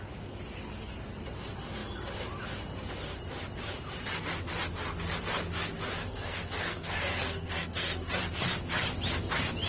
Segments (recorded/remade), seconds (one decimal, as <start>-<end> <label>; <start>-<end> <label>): 0.0-6.0 recorded; 6.0-8.1 remade; 8.1-9.7 recorded